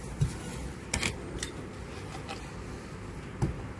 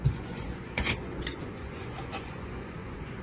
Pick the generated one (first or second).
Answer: second